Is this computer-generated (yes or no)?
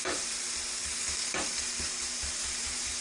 yes